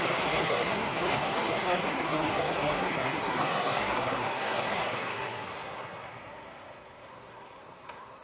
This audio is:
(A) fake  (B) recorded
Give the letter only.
A